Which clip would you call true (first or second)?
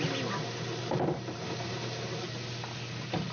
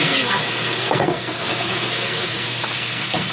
first